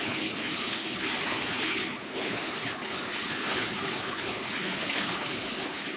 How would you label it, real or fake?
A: fake